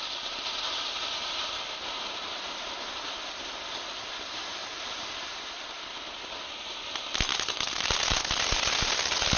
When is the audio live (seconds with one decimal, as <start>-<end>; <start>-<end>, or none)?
0.0-4.6; 5.5-9.4